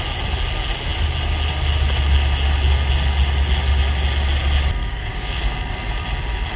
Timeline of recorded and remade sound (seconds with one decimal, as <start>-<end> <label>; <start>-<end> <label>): 0.0-4.8 recorded; 4.8-5.4 remade; 5.4-6.6 recorded